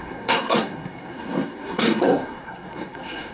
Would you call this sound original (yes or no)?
no